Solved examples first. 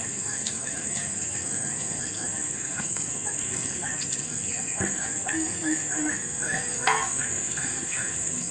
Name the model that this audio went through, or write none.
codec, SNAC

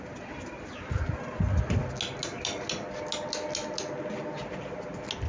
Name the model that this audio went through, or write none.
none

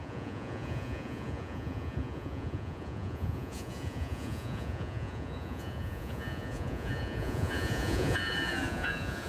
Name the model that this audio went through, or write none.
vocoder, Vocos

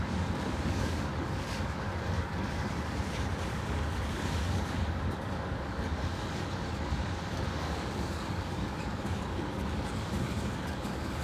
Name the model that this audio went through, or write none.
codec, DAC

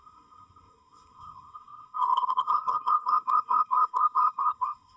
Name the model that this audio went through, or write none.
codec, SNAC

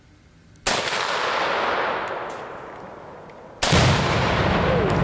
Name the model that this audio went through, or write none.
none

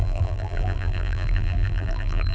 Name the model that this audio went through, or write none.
vocoder, BigVGAN v2